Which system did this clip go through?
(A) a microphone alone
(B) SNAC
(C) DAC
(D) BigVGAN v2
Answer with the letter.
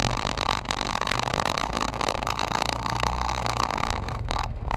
B